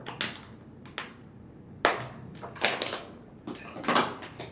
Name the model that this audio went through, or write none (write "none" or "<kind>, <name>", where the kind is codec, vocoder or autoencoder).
none